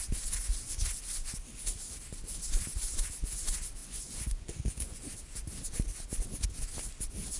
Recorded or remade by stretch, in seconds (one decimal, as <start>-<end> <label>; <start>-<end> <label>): 0.0-3.8 recorded; 3.8-5.1 remade; 5.1-7.4 recorded

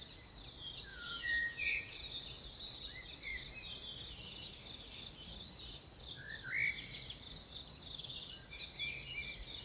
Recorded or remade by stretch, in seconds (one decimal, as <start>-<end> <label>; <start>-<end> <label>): 0.0-0.9 recorded; 0.9-1.8 remade; 1.8-9.6 recorded

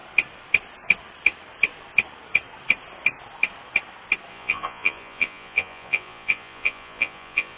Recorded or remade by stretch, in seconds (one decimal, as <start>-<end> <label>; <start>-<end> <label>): 0.0-4.3 recorded; 4.3-7.6 remade

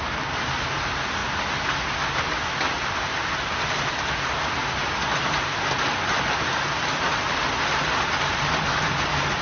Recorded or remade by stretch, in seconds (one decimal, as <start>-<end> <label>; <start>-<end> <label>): 0.0-9.4 recorded

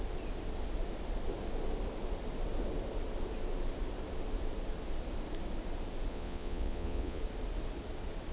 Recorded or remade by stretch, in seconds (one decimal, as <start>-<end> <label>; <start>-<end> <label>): 0.0-6.1 recorded; 6.1-7.2 remade; 7.2-8.3 recorded

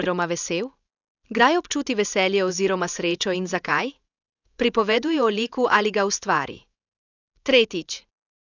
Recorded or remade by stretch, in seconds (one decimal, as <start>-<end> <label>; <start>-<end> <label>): 0.0-2.5 recorded; 2.5-7.0 remade; 7.0-8.5 recorded